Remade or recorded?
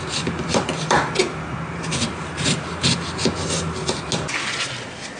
recorded